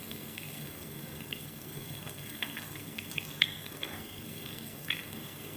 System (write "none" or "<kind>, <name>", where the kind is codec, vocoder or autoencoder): codec, SNAC